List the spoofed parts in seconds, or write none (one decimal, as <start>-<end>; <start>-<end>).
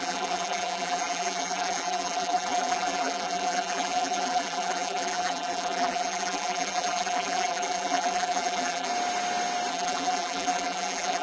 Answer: 0.0-8.9; 9.7-11.2